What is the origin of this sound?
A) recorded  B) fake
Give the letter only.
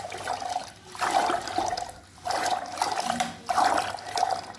A